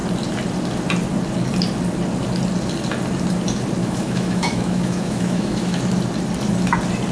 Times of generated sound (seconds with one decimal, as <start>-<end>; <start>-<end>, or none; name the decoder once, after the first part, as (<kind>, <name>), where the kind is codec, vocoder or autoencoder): 3.8-5.8 (autoencoder, DAC-VAE)